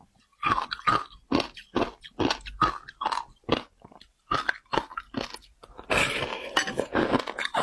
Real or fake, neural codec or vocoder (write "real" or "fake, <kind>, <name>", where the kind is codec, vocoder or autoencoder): real